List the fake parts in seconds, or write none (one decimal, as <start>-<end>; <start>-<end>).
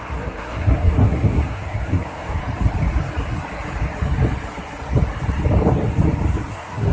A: 0.0-2.4; 6.5-6.9